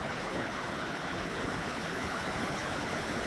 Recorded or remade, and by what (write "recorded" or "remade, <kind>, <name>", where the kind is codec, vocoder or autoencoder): remade, codec, HILCodec